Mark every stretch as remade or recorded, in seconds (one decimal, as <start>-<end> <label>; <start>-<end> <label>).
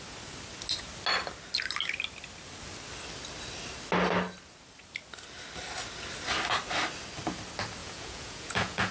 0.0-7.8 recorded; 7.8-8.9 remade